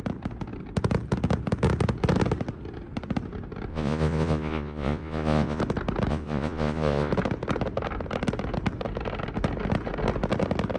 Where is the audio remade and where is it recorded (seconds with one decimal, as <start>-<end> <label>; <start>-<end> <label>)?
0.0-3.7 recorded; 3.7-5.6 remade; 5.6-6.1 recorded; 6.1-7.1 remade; 7.1-10.8 recorded